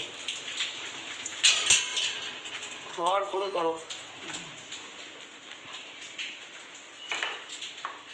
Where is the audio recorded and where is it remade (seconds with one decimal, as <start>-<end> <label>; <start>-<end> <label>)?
0.0-2.9 recorded; 2.9-3.9 remade; 3.9-8.1 recorded